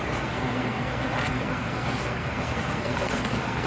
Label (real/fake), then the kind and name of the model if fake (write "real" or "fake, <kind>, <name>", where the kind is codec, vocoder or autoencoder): fake, codec, SNAC